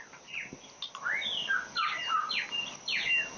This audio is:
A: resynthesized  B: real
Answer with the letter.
B